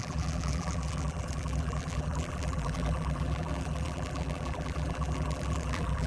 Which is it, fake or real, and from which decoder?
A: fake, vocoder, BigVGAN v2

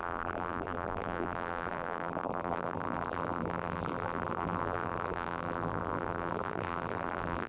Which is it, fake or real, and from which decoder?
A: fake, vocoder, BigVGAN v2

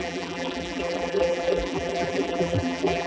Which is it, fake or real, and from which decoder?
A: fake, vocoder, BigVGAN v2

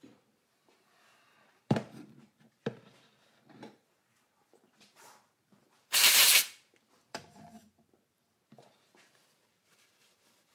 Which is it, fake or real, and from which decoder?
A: fake, vocoder, BigVGAN v2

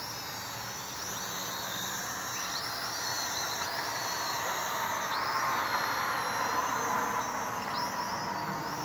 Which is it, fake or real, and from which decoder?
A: real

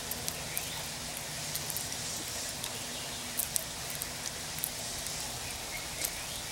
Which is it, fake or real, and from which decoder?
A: real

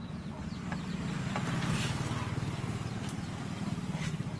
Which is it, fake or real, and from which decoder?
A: fake, vocoder, BigVGAN v2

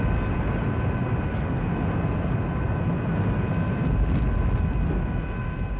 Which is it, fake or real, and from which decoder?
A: real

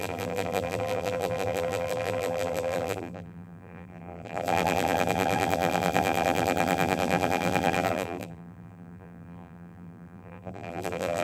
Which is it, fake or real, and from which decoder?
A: fake, vocoder, BigVGAN v2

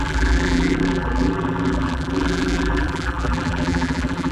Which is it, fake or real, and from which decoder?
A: fake, vocoder, BigVGAN v2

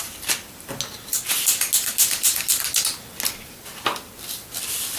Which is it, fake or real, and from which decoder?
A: real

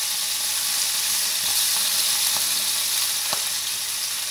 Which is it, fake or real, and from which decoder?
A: real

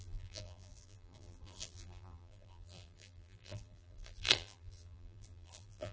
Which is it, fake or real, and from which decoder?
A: fake, vocoder, BigVGAN v2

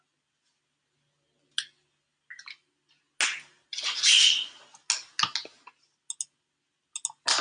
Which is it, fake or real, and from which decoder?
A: real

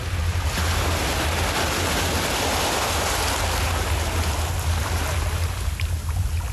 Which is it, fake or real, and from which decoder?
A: real